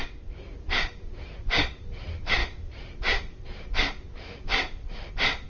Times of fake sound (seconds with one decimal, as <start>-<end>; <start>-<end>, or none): none